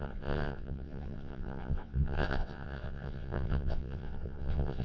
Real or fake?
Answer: fake